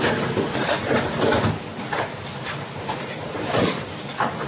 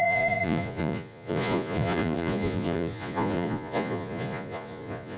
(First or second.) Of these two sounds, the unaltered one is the first